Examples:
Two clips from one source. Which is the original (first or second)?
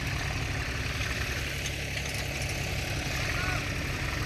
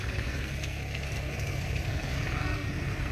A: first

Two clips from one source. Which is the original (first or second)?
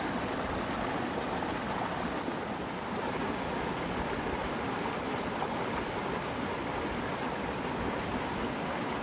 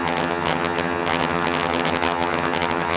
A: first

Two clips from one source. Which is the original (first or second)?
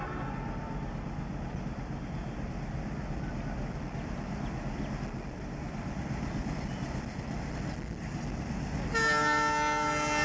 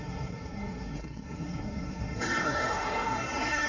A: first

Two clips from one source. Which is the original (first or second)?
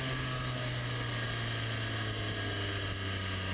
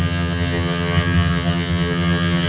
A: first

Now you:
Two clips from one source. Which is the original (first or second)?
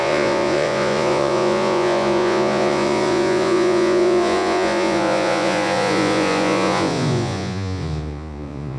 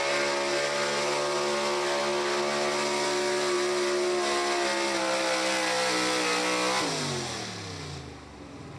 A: second